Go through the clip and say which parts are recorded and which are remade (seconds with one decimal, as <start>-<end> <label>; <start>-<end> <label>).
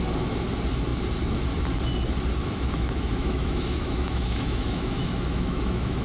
0.0-2.4 recorded; 2.4-6.0 remade